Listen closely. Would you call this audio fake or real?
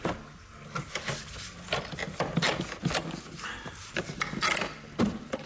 real